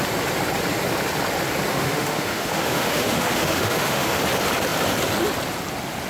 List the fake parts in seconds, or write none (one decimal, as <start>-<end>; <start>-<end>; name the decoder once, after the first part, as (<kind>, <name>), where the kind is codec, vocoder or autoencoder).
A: 1.7-4.2 (autoencoder, DAC-VAE)